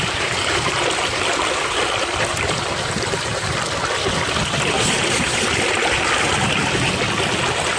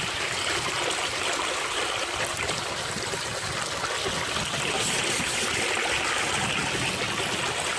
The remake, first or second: first